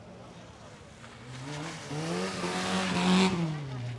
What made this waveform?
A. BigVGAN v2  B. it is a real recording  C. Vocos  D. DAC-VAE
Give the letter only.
B